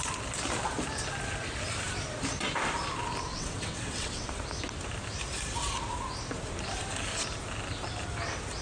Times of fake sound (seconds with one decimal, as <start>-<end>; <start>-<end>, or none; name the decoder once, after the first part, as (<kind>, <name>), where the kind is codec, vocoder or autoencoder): 3.3-4.4 (vocoder, WaveNeXt)